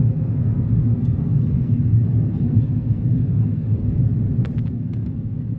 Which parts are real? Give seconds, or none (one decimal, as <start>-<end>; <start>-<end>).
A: 4.0-4.7